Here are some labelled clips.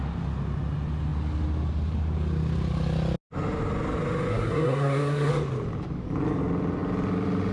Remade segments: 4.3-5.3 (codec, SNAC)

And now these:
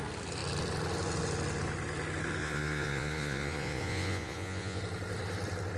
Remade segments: 2.4-4.8 (vocoder, Vocos)

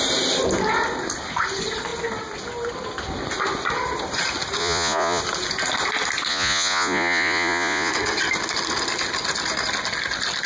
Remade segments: 4.6-5.2 (vocoder, Vocos); 6.3-7.9

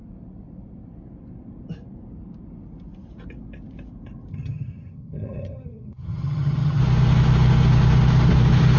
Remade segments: 4.3-6.8 (vocoder, HiFi-GAN)

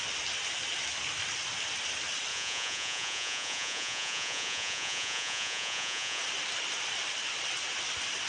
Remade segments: 2.3-6.2 (vocoder, Vocos)

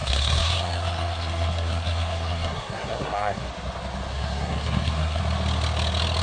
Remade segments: 0.0-3.5 (codec, SNAC); 4.1-5.2